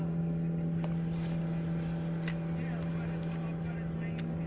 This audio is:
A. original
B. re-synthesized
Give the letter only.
A